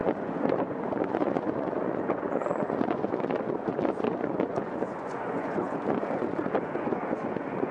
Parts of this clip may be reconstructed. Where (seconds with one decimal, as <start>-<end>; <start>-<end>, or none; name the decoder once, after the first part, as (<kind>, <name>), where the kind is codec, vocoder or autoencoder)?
0.0-7.7 (vocoder, Vocos)